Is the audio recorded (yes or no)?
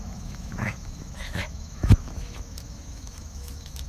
no